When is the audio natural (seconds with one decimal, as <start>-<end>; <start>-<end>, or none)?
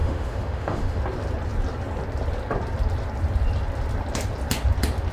1.0-5.1